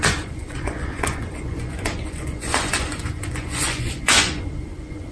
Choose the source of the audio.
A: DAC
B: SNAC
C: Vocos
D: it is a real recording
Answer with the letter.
C